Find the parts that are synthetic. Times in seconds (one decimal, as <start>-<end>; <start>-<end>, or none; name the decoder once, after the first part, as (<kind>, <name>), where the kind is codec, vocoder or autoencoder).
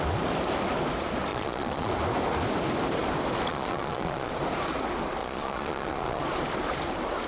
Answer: 1.3-1.9 (vocoder, Vocos); 3.5-4.3; 5.2-6.2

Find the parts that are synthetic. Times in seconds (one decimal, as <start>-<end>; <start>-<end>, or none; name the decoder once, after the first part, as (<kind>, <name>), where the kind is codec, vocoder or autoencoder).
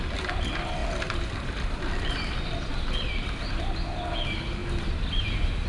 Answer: none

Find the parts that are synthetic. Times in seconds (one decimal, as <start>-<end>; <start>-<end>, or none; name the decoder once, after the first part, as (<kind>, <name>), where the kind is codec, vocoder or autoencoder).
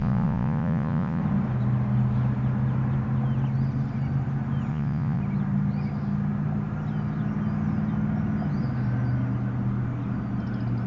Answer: 0.0-1.2 (vocoder, Vocos); 4.7-5.2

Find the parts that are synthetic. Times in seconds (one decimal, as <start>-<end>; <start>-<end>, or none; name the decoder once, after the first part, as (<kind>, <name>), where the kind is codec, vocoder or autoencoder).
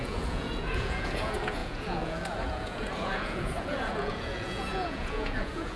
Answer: 0.0-5.8 (vocoder, Vocos)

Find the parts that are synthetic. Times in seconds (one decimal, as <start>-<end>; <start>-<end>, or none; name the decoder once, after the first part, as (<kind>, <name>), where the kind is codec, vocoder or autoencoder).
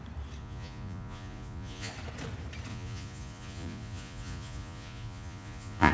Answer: 0.4-1.9 (vocoder, Vocos); 2.7-5.9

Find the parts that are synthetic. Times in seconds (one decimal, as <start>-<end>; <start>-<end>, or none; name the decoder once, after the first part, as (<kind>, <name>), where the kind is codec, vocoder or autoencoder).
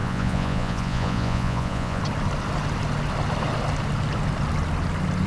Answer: 0.0-2.0 (vocoder, Vocos)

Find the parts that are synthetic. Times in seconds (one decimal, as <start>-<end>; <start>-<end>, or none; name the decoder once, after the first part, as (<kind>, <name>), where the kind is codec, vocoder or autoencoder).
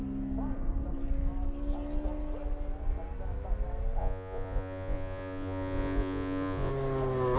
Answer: 4.0-6.7 (vocoder, Vocos)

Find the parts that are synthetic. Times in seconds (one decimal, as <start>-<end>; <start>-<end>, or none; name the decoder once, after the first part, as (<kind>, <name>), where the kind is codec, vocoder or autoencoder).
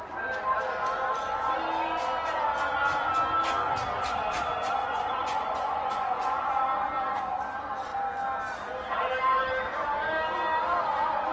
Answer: 4.8-6.5 (vocoder, Vocos)